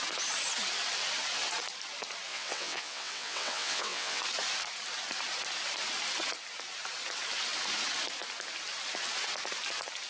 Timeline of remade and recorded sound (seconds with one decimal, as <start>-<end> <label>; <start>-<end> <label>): 0.0-2.3 recorded; 2.3-4.2 remade; 4.2-10.1 recorded